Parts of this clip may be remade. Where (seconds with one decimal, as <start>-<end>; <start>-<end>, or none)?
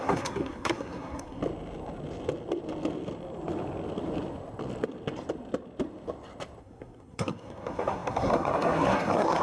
0.0-1.4; 6.6-9.4